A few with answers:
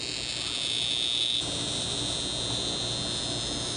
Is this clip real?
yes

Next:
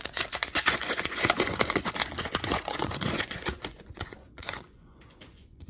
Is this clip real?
no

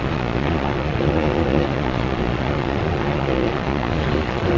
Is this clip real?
no